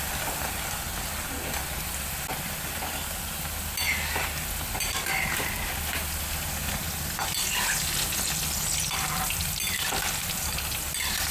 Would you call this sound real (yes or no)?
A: yes